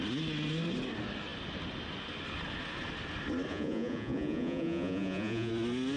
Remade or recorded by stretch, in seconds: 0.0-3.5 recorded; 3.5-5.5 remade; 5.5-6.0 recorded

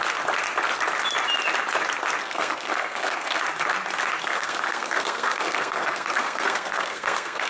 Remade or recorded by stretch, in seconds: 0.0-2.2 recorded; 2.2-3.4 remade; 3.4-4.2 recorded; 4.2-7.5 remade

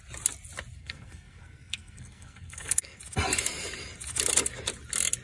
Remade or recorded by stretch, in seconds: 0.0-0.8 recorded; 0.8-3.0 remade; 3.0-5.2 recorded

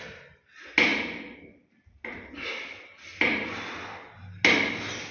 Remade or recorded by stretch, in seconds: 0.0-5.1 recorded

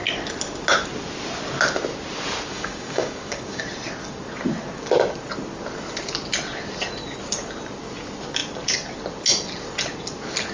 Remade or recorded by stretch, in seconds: 0.0-2.5 recorded; 2.5-3.6 remade; 3.6-10.5 recorded

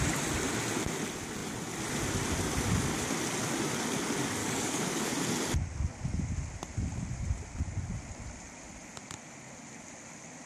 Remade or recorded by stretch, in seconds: 0.0-4.4 recorded; 4.4-5.1 remade; 5.1-10.5 recorded